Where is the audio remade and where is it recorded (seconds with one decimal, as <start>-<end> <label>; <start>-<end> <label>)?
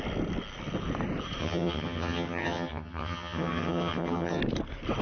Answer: 0.0-1.4 recorded; 1.4-4.4 remade; 4.4-5.0 recorded